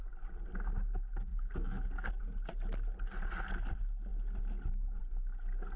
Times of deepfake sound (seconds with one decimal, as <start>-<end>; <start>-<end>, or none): none